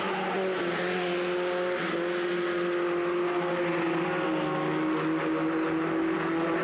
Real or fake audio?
real